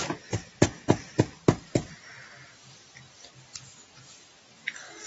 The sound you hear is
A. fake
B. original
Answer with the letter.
B